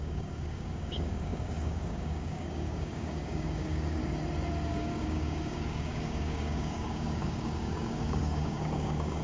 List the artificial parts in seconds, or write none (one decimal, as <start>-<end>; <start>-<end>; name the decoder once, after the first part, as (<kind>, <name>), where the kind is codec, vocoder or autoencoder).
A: 0.0-4.0 (codec, DAC); 4.7-9.2